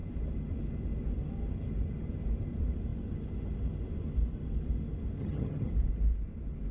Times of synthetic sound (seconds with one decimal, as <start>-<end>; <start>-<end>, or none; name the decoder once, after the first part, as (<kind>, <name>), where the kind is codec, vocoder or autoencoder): 5.2-5.7 (vocoder, HiFi-GAN)